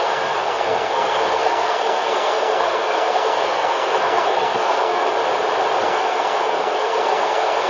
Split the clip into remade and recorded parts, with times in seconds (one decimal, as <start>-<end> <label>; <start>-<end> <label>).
0.0-5.1 remade; 5.1-5.8 recorded; 5.8-7.7 remade